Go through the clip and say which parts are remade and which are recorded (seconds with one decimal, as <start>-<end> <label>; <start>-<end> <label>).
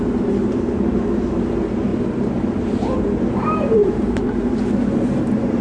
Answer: 0.0-5.6 remade